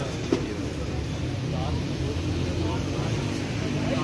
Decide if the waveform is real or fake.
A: fake